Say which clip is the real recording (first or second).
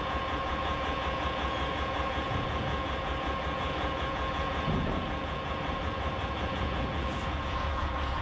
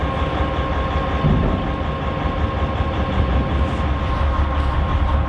second